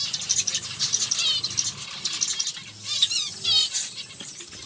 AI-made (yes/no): no